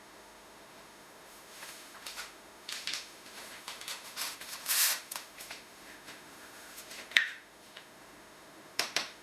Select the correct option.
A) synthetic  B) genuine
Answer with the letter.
A